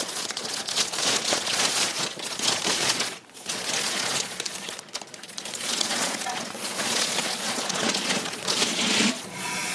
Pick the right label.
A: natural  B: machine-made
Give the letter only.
B